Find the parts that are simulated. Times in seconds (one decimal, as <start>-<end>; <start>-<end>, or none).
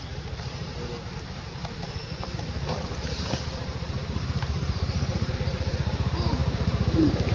0.0-7.3